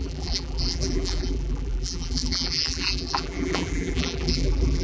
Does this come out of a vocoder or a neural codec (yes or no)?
yes